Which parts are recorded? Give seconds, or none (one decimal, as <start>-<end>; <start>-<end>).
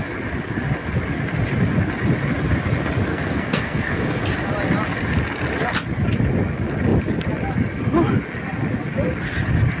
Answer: 0.0-3.1; 4.2-9.8